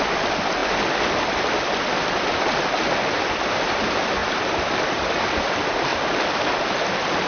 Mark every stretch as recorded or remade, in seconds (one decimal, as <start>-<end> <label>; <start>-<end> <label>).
0.0-0.6 remade; 0.6-3.5 recorded; 3.5-5.9 remade; 5.9-7.3 recorded